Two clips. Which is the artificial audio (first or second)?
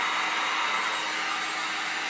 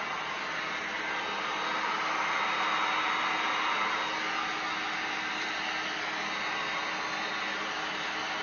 first